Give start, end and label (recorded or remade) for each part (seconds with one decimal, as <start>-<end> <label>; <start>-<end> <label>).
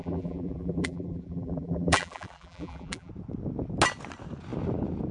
0.0-3.1 remade; 3.1-5.1 recorded